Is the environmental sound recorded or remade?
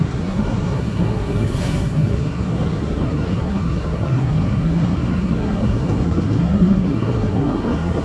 remade